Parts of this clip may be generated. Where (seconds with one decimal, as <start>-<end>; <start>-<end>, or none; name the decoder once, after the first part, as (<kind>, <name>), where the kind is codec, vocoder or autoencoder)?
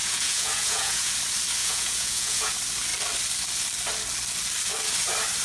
0.0-1.1 (vocoder, Vocos); 1.6-2.5